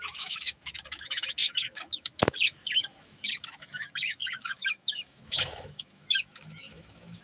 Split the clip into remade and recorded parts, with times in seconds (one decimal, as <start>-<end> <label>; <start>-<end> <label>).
0.0-7.2 remade